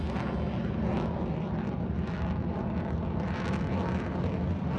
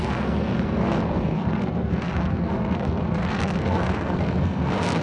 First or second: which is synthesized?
second